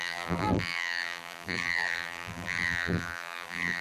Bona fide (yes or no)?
no